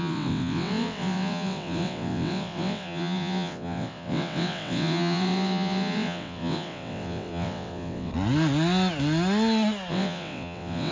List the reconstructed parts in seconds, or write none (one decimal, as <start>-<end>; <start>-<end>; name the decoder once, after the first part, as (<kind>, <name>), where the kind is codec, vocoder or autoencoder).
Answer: 0.0-8.1 (vocoder, WaveNeXt); 9.9-10.9